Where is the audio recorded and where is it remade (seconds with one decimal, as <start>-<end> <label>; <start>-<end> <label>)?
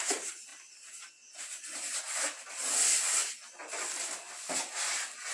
0.0-5.3 recorded